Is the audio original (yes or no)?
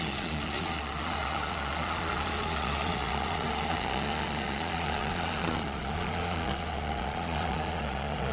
no